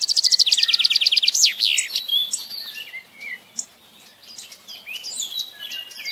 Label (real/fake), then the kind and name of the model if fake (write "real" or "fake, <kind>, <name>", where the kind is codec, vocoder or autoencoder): real